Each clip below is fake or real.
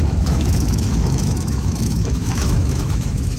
fake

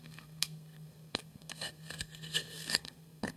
fake